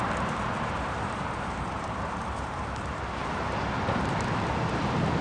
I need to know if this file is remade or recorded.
remade